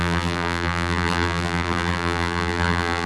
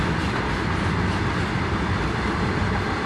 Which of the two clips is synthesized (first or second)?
first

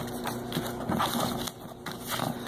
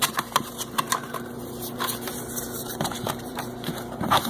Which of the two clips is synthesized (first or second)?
second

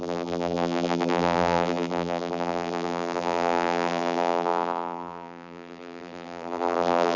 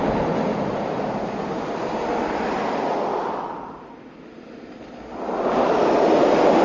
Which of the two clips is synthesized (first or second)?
first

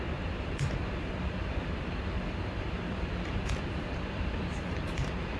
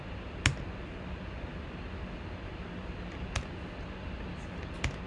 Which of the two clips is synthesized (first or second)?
first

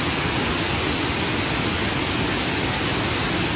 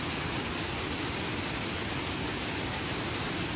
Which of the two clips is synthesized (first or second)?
second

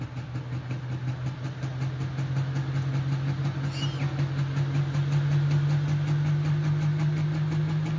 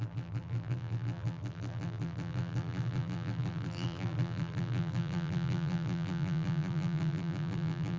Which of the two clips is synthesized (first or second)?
second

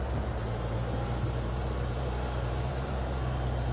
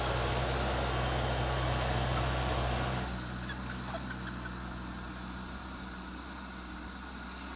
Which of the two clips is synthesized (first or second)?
first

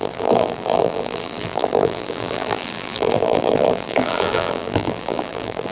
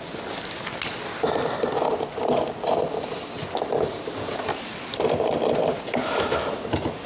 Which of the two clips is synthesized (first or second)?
first